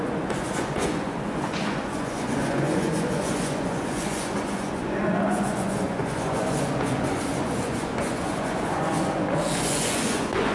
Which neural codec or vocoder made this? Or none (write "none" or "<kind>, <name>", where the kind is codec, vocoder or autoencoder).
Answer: vocoder, Vocos